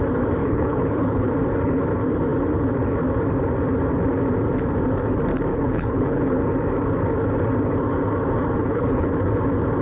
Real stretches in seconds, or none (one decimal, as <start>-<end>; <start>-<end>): 0.0-0.4; 1.3-5.5; 6.4-8.6; 9.1-9.8